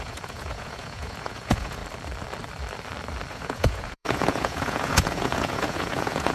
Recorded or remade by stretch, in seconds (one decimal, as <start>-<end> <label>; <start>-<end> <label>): 0.0-1.8 remade; 1.8-3.3 recorded; 3.3-6.3 remade